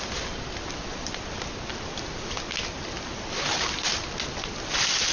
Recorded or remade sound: recorded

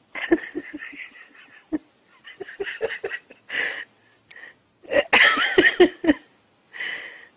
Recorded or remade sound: recorded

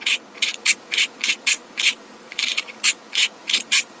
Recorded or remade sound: remade